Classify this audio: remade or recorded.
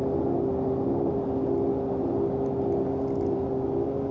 recorded